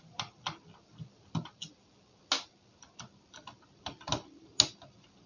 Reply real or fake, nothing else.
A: real